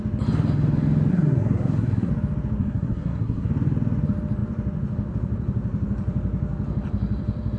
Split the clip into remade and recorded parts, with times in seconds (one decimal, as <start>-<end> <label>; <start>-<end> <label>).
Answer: 0.0-1.1 recorded; 1.1-2.1 remade; 2.1-2.6 recorded; 2.6-3.5 remade; 3.5-7.6 recorded